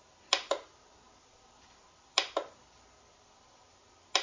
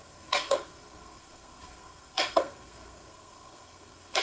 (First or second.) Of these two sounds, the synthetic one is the second